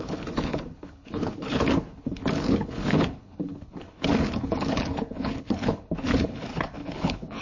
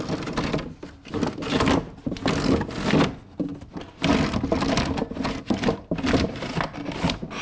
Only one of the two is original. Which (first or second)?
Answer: second